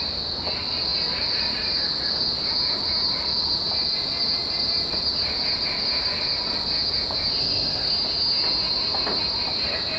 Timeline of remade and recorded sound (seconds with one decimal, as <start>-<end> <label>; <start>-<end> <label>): 0.0-7.4 recorded; 7.4-7.9 remade; 7.9-10.0 recorded